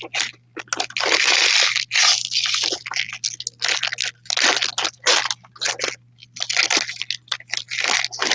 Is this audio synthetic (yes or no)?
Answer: no